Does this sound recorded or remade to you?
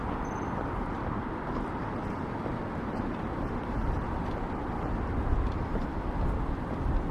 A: remade